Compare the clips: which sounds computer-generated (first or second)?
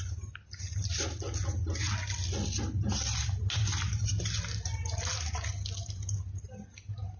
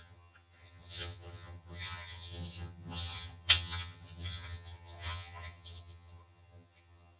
second